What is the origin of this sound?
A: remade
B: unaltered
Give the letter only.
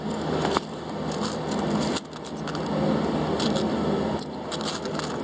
B